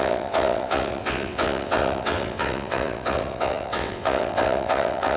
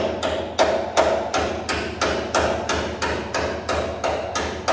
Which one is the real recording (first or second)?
second